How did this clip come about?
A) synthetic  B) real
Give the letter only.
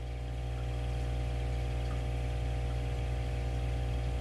B